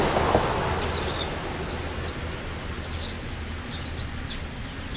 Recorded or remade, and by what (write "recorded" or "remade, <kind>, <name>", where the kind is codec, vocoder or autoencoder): recorded